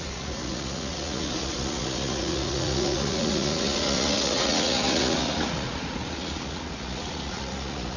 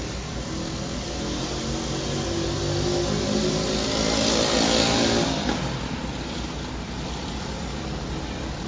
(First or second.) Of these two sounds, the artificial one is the first